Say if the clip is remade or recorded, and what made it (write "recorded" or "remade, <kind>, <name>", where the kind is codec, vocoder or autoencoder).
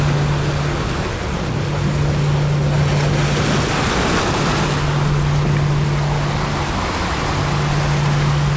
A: recorded